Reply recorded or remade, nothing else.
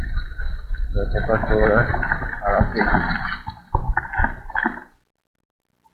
recorded